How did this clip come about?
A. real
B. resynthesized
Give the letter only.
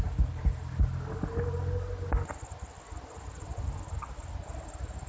A